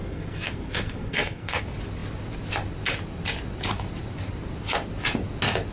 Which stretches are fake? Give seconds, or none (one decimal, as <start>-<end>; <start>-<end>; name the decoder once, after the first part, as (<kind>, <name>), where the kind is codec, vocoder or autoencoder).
0.0-1.6 (codec, SNAC)